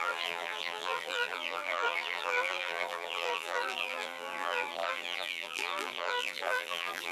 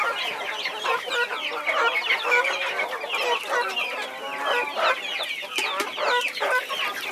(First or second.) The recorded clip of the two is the second